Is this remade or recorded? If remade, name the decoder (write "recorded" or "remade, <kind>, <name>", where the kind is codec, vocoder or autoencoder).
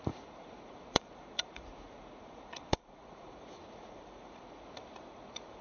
remade, vocoder, Vocos